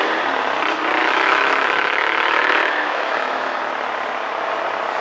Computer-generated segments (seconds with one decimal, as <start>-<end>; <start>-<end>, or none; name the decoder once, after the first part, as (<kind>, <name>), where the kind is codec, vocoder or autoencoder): 1.0-3.6 (autoencoder, DAC-VAE)